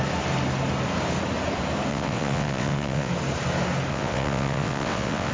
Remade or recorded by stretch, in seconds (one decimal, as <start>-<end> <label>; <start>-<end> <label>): 0.0-1.9 recorded; 1.9-3.1 remade; 3.1-3.9 recorded; 3.9-5.3 remade